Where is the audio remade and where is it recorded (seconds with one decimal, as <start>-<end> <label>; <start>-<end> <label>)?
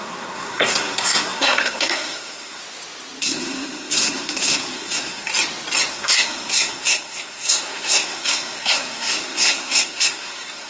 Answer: 0.0-2.6 remade; 2.6-3.2 recorded; 3.2-5.3 remade; 5.3-5.9 recorded; 5.9-10.7 remade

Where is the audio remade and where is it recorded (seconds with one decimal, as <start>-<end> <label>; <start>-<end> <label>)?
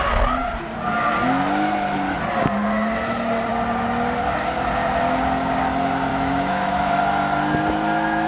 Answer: 0.0-6.1 recorded; 6.1-6.7 remade; 6.7-8.3 recorded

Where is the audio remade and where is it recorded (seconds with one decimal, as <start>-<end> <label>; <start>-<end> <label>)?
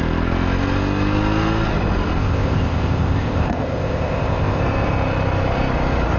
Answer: 0.0-2.2 recorded; 2.2-4.6 remade; 4.6-6.2 recorded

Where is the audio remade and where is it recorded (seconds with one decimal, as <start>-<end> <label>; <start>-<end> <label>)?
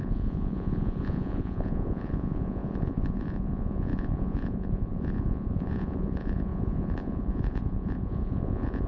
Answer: 0.0-8.9 remade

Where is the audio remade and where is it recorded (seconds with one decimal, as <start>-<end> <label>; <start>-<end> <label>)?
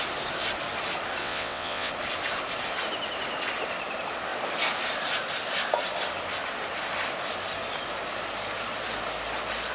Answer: 0.0-1.2 recorded; 1.2-1.9 remade; 1.9-9.7 recorded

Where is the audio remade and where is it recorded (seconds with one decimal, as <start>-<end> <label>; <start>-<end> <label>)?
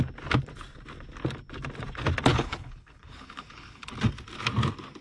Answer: 0.0-2.3 recorded; 2.3-3.9 remade; 3.9-5.0 recorded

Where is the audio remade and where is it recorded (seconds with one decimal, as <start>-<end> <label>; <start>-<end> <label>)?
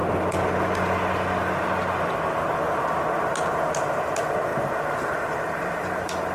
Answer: 0.0-2.8 recorded; 2.8-4.5 remade; 4.5-5.1 recorded; 5.1-6.3 remade